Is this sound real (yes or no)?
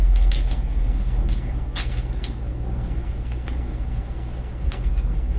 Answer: no